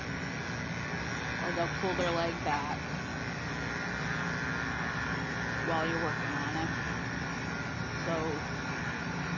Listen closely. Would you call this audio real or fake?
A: real